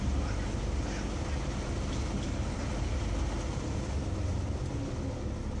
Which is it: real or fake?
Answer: real